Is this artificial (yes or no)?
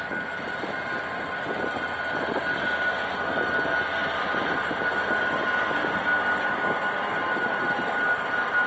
no